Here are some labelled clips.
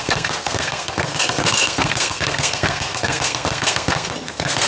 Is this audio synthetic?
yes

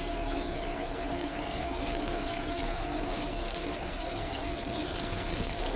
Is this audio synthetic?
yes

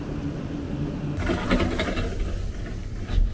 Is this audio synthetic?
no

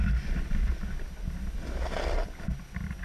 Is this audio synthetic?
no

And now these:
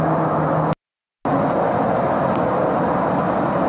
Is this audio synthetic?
no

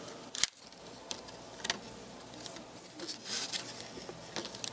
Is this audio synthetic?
no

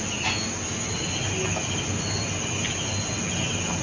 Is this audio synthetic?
no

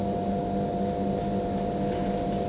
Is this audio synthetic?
no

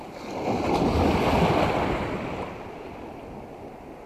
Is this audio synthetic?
no